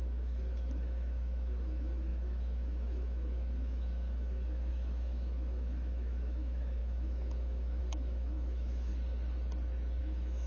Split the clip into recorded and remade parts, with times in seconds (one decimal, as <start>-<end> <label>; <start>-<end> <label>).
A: 0.0-8.9 remade; 8.9-10.0 recorded; 10.0-10.5 remade